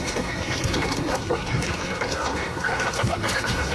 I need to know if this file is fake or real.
fake